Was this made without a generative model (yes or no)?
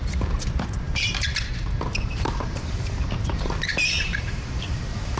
no